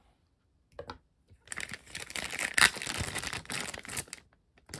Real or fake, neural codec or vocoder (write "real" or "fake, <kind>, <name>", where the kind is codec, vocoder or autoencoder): real